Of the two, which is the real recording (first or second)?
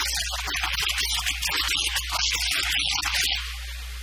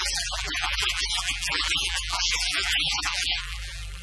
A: first